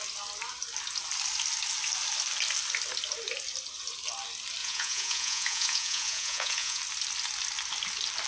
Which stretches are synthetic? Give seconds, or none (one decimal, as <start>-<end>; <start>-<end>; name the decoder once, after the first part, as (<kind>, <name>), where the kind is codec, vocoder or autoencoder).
4.6-6.8 (vocoder, Vocos)